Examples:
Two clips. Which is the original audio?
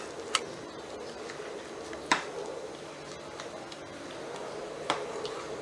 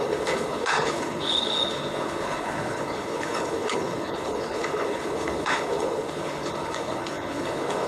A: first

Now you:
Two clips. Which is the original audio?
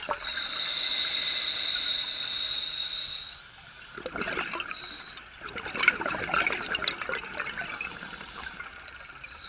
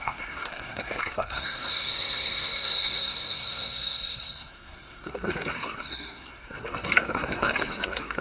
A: first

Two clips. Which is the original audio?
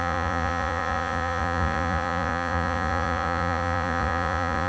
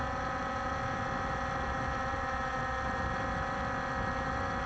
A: second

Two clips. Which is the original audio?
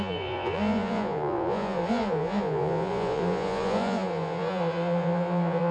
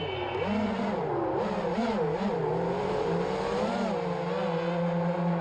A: second